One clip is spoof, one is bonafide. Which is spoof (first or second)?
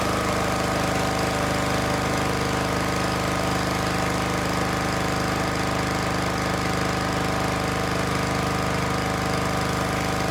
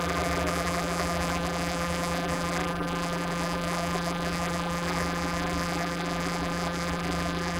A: second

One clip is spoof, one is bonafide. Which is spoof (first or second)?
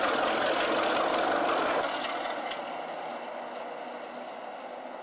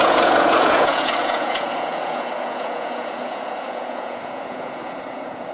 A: second